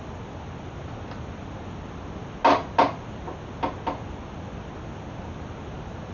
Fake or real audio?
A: real